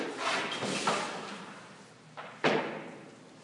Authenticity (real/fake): real